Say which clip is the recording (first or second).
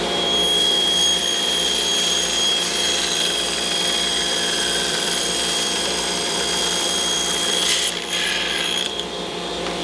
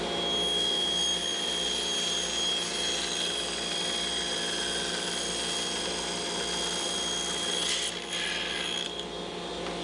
second